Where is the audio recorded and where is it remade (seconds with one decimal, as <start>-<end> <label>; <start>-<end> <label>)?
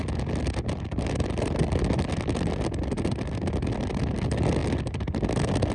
0.0-5.7 recorded